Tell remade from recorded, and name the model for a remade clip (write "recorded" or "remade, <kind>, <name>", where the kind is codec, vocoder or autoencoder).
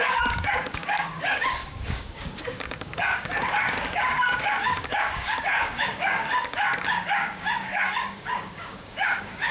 remade, codec, DAC